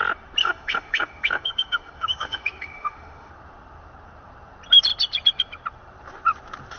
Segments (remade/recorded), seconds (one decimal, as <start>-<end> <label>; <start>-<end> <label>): 0.0-0.4 recorded; 0.4-3.3 remade; 3.3-6.8 recorded